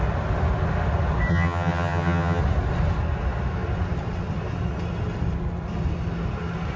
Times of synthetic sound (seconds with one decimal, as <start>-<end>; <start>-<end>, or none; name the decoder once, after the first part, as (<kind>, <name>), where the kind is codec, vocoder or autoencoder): 1.3-2.4 (vocoder, HiFi-GAN)